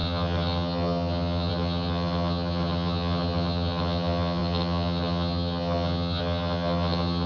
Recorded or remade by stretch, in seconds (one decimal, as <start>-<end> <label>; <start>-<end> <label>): 0.0-7.3 remade